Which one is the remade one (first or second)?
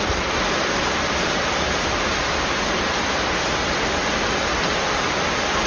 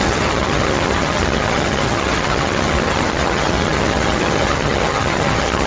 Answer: second